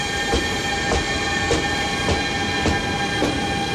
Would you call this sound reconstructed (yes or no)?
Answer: no